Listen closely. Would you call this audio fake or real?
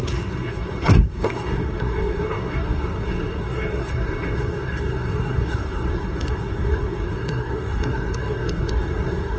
fake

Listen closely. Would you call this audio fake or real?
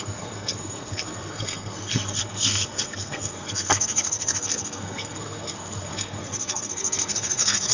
fake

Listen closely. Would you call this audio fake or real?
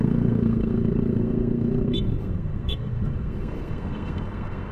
fake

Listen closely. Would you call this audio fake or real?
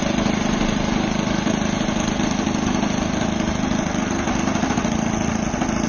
real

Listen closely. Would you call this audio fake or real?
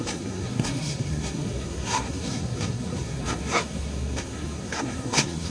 fake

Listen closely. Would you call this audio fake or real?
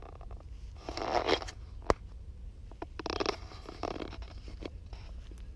real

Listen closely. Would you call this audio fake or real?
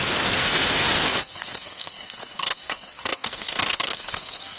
fake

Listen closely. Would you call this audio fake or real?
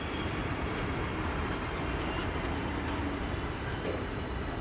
real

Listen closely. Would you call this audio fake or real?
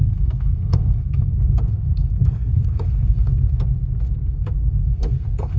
fake